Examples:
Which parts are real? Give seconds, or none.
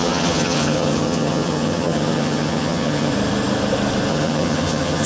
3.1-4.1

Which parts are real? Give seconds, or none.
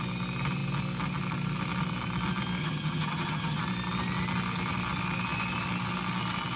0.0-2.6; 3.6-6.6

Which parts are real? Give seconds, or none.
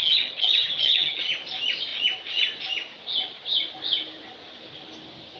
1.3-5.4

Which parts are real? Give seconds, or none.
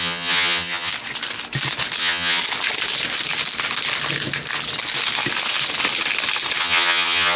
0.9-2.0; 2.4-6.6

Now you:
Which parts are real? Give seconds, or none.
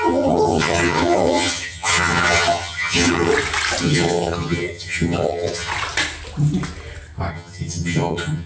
3.3-3.8; 5.7-7.3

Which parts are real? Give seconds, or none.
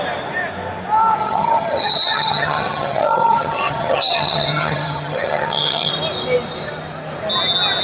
0.0-1.2; 5.9-7.8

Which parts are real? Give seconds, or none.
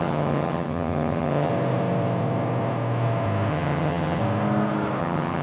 1.5-3.5; 4.2-5.0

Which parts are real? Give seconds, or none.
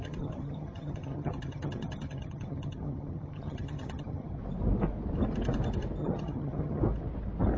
4.4-6.0; 6.8-7.6